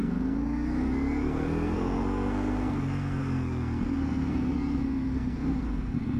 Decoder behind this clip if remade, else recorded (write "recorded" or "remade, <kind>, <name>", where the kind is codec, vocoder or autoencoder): remade, codec, SNAC